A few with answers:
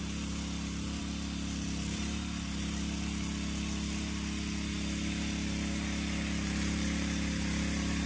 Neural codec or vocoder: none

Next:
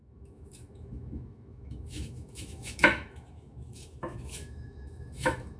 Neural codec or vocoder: autoencoder, DAC-VAE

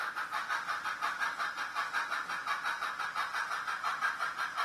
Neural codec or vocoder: none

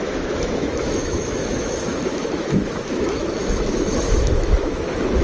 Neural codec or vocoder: autoencoder, DAC-VAE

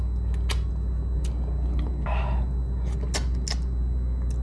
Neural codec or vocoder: none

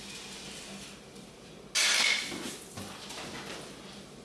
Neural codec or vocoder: none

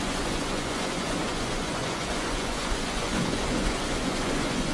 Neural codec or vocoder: vocoder, Vocos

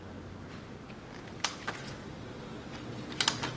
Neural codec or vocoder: none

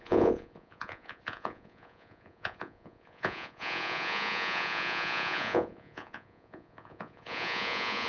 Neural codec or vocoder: vocoder, Vocos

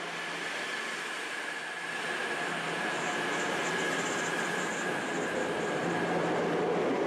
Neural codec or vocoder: none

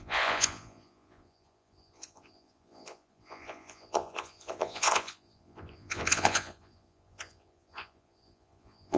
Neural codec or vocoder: vocoder, Vocos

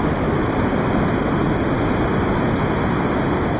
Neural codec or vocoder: none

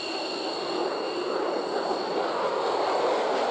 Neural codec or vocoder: none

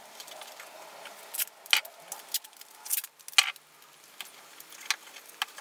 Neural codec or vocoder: none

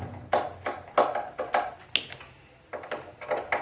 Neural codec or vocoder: none